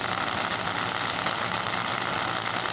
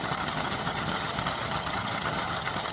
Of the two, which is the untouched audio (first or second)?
first